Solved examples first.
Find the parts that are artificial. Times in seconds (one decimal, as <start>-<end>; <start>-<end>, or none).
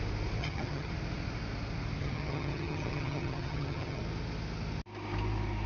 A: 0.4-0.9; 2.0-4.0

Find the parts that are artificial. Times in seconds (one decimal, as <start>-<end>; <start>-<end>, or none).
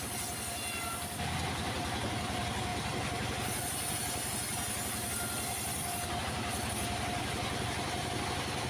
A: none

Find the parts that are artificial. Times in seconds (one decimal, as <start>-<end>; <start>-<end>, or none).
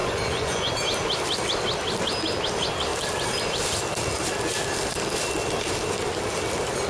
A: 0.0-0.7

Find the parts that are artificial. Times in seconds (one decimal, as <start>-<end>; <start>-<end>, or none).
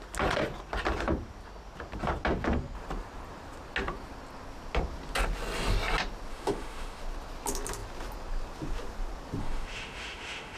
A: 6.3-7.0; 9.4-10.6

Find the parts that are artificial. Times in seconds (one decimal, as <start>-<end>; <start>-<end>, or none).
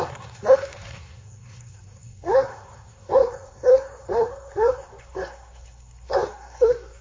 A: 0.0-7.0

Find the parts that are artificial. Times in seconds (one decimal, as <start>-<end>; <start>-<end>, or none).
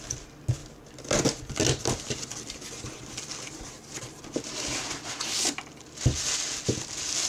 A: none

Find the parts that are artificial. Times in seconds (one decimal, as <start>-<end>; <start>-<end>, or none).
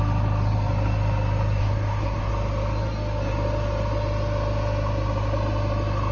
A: 1.6-2.3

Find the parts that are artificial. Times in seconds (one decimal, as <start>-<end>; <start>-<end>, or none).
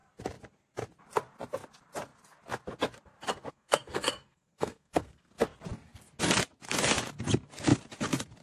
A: 3.5-5.3